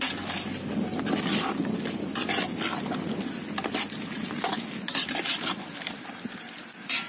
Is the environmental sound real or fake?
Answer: real